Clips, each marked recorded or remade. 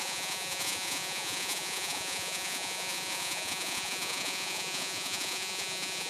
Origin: remade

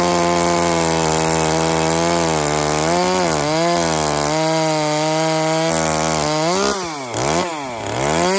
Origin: recorded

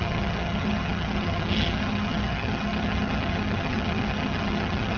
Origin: remade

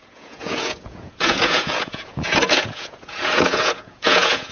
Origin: remade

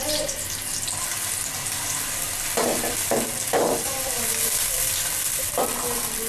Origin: remade